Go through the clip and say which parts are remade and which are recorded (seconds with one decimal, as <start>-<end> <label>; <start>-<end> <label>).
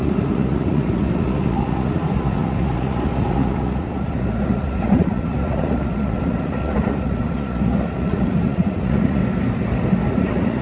0.0-9.2 remade; 9.2-10.1 recorded; 10.1-10.6 remade